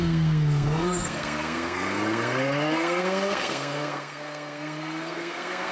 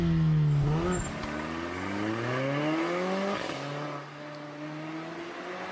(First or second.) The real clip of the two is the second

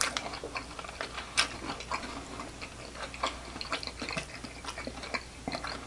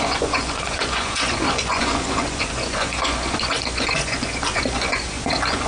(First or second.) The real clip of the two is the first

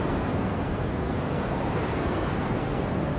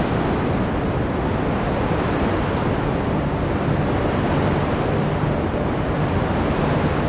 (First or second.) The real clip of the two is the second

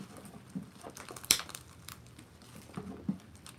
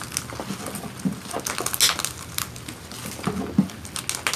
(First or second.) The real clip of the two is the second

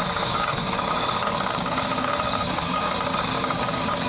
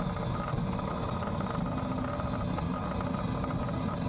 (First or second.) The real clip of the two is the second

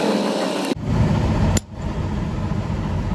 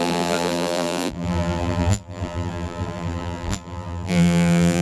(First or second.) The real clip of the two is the first